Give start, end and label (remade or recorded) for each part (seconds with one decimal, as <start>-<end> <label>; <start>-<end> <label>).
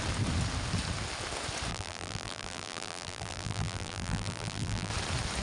0.0-1.7 recorded; 1.7-4.9 remade; 4.9-5.4 recorded